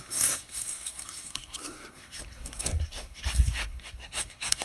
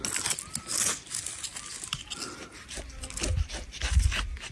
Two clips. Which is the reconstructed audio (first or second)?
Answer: first